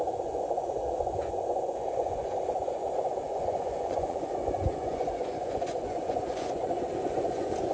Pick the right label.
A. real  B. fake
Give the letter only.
B